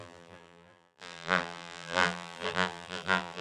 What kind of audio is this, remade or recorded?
remade